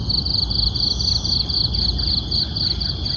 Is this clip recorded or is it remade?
recorded